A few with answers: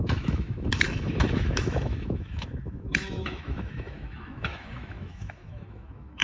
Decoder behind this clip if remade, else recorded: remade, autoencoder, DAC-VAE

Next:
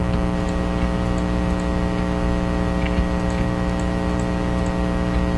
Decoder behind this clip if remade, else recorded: recorded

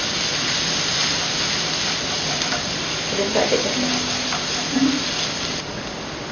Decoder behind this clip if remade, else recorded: recorded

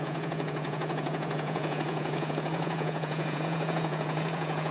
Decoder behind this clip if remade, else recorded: remade, vocoder, Vocos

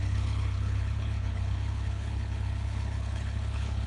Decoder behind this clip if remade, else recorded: remade, codec, HILCodec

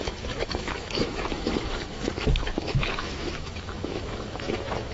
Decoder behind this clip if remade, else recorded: remade, autoencoder, DAC-VAE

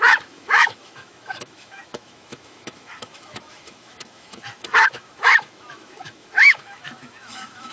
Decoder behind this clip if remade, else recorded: remade, autoencoder, DAC-VAE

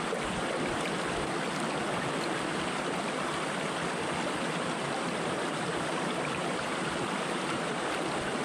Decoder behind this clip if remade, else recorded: recorded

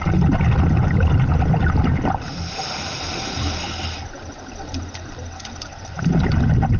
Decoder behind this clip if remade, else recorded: recorded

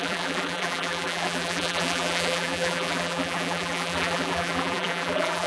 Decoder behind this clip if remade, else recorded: remade, vocoder, BigVGAN v2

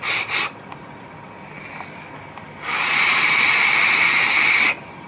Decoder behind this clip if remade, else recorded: recorded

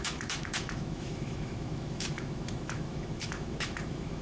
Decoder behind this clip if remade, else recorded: remade, autoencoder, DAC-VAE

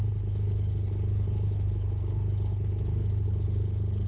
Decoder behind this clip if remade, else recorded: remade, codec, HILCodec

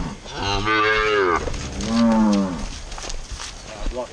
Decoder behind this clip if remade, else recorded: recorded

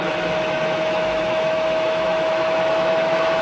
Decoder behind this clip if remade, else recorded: remade, autoencoder, DAC-VAE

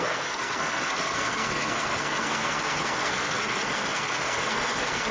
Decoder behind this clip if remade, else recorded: remade, codec, SNAC